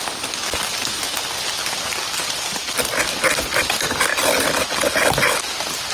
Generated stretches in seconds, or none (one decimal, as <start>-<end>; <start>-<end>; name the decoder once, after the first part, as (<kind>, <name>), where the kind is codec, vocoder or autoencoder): none